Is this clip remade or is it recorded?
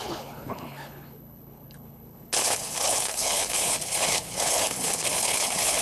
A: remade